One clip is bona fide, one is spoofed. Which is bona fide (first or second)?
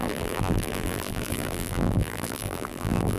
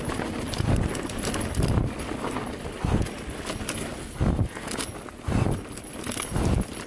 second